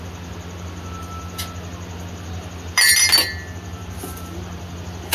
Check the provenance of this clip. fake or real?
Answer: real